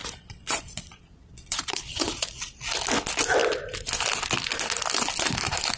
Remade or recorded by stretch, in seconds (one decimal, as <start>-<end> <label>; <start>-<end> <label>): 0.0-2.4 remade; 2.4-5.8 recorded